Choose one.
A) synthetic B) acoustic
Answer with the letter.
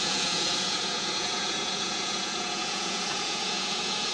A